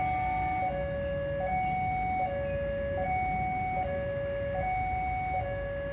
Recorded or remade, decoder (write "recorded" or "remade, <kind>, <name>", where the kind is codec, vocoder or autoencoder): recorded